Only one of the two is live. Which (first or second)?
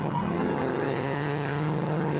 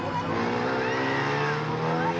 second